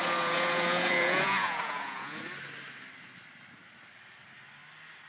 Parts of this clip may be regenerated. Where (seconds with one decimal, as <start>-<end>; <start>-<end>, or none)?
0.0-2.2